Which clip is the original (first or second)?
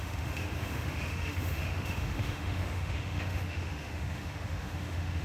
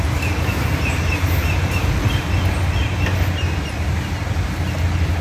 second